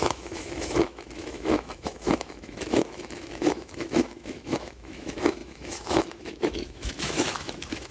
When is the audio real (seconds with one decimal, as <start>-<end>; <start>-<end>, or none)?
none